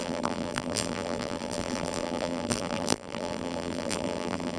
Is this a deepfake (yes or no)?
yes